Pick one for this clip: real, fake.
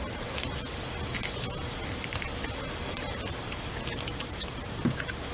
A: real